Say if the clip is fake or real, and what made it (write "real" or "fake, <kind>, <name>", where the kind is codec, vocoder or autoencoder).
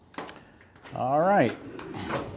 real